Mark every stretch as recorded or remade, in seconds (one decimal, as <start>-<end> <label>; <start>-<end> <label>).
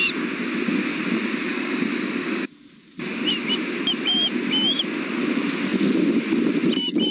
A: 0.0-1.5 recorded; 1.5-2.5 remade; 2.5-7.1 recorded